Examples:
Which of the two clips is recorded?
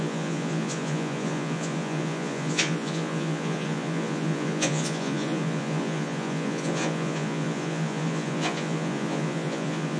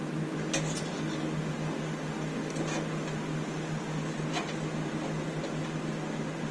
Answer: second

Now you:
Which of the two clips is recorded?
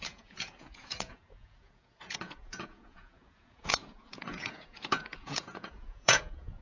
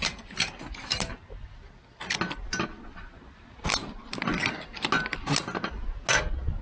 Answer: second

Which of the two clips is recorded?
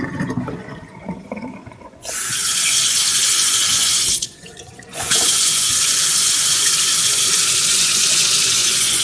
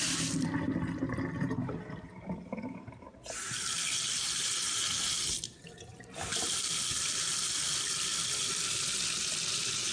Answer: second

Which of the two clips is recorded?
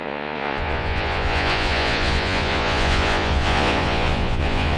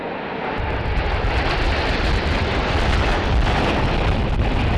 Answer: second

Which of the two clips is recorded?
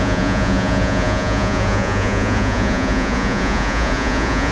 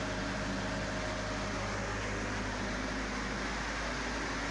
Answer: second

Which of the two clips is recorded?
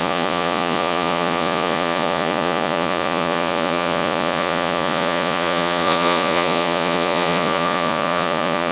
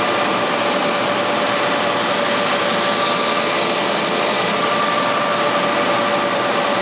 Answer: second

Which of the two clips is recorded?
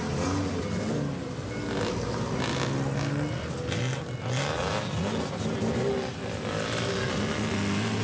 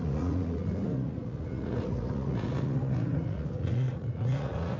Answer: first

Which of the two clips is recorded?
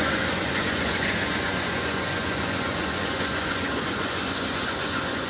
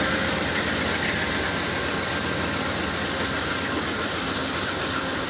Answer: second